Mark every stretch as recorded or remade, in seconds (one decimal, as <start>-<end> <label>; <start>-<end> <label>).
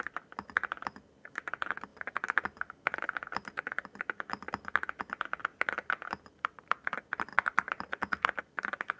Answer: 0.0-7.3 recorded; 7.3-7.9 remade; 7.9-9.0 recorded